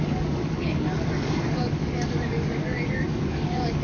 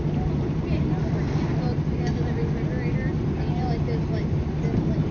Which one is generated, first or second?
first